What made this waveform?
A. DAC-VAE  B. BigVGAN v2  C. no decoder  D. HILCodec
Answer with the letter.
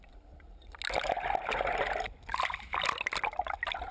C